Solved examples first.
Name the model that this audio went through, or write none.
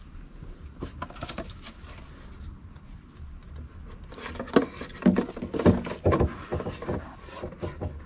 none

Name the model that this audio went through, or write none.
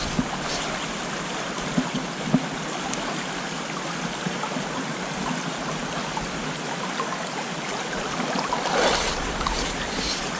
none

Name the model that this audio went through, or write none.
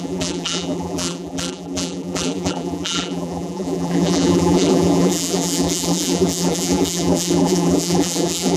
vocoder, BigVGAN v2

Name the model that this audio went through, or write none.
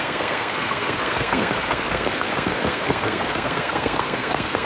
codec, SNAC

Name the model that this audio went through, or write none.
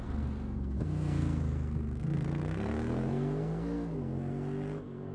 codec, SNAC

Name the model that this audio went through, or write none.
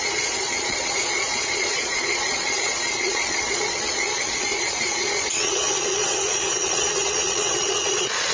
vocoder, Vocos